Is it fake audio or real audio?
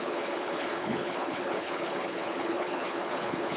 fake